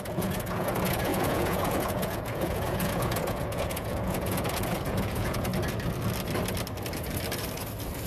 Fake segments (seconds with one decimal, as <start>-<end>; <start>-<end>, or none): 0.0-5.5

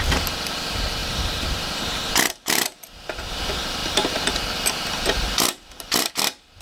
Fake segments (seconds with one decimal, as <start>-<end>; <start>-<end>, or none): 1.0-2.1; 3.8-6.1

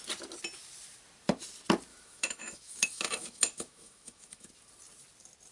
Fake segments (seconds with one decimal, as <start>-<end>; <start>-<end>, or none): 1.9-4.5

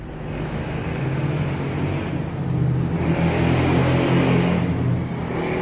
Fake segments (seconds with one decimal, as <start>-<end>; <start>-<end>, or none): none

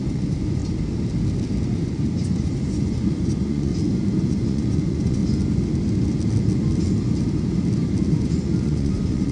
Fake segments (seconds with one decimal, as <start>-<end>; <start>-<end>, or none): 0.0-0.6; 1.7-3.7; 4.2-5.2; 8.1-9.3